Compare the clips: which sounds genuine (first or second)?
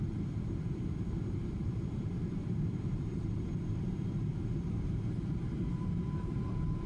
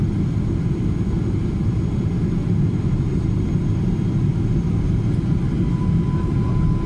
second